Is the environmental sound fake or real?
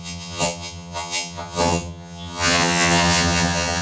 fake